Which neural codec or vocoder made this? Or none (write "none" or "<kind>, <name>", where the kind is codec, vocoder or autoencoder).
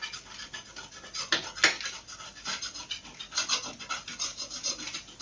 none